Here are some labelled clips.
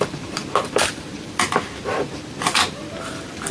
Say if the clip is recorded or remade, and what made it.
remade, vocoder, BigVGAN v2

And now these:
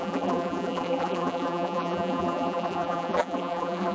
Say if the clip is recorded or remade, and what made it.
remade, vocoder, BigVGAN v2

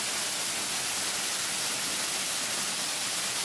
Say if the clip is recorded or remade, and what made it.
recorded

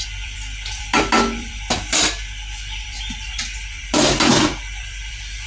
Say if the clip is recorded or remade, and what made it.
remade, vocoder, BigVGAN v2